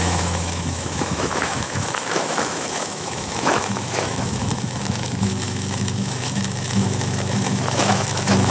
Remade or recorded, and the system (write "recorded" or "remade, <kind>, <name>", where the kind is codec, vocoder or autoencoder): remade, autoencoder, DAC-VAE